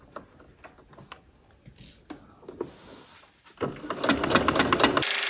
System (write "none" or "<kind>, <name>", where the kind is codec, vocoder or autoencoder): none